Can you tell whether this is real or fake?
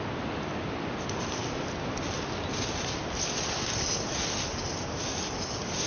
real